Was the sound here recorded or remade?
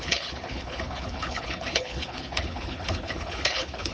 remade